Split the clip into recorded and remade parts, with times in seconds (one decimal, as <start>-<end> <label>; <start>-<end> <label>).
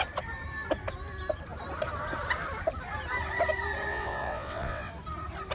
0.0-3.9 recorded; 3.9-4.9 remade; 4.9-5.5 recorded